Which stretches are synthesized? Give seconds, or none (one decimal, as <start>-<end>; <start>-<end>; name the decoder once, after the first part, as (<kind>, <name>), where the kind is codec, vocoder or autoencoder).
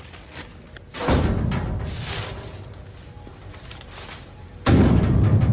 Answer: 3.3-4.5 (vocoder, BigVGAN v2)